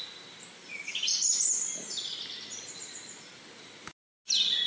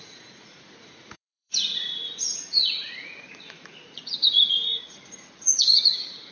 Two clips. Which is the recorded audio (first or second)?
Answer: first